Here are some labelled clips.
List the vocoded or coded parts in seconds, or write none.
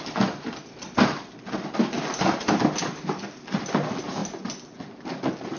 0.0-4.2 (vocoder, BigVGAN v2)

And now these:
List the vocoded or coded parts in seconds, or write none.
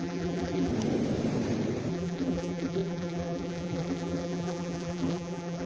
0.0-0.7 (vocoder, BigVGAN v2); 1.9-5.7